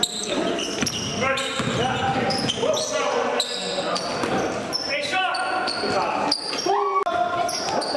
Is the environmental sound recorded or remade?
recorded